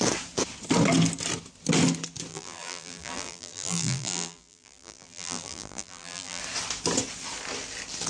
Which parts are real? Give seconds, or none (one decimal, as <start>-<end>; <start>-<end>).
0.0-2.3; 6.4-8.1